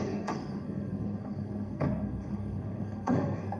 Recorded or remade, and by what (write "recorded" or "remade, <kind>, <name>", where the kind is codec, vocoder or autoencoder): remade, codec, SNAC